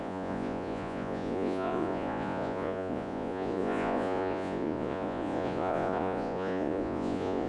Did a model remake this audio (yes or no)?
yes